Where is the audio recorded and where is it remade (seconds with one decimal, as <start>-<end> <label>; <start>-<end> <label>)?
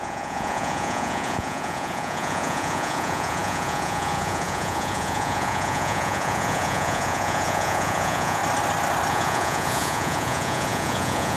0.0-8.4 remade; 8.4-9.1 recorded; 9.1-11.4 remade